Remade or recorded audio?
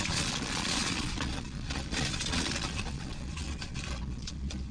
remade